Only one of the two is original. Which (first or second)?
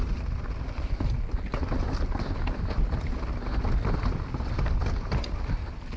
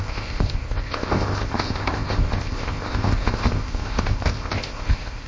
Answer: first